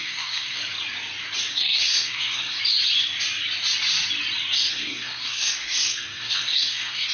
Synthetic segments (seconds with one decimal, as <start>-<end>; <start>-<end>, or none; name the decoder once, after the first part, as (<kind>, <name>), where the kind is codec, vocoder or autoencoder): 0.0-0.6 (codec, SNAC); 1.5-2.6; 4.7-7.1